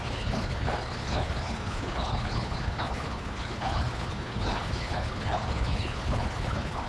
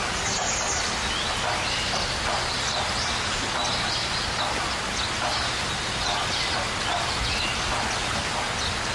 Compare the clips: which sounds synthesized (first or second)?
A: first